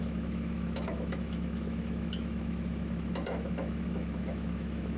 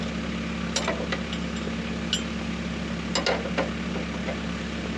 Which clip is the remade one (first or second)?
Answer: first